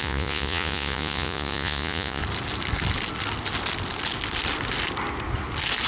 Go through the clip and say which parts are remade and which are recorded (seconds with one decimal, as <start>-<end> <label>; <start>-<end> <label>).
0.0-2.2 remade; 2.2-5.9 recorded